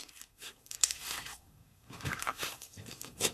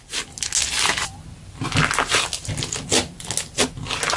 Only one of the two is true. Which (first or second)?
second